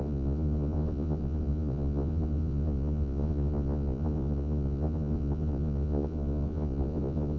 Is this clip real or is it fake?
fake